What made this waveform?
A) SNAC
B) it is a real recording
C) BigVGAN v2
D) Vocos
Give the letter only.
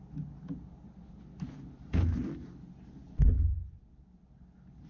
B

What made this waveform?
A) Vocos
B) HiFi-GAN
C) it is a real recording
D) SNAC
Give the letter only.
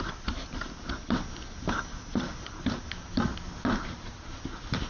C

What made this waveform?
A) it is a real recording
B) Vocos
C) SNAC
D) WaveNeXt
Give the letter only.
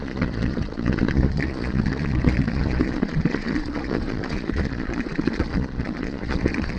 B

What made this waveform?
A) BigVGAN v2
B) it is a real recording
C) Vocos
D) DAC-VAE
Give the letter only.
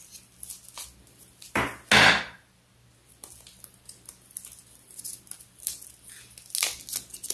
B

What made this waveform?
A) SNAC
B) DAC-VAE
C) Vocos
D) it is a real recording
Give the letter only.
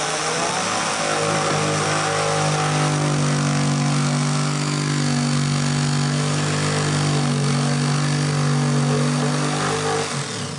D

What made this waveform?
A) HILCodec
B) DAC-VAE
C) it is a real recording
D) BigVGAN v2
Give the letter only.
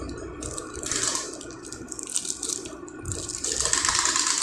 C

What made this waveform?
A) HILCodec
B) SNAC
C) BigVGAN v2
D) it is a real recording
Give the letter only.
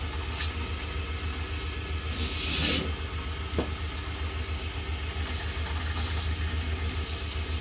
D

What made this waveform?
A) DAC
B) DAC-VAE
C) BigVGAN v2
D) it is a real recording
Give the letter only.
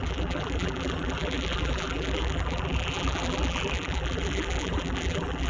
C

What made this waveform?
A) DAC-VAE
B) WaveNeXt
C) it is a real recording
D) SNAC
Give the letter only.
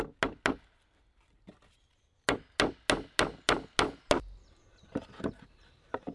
C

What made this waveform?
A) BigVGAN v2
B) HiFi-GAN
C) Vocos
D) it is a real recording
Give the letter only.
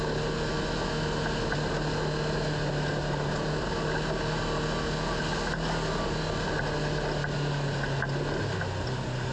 D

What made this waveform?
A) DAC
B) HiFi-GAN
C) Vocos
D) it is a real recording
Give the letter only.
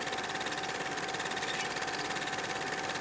D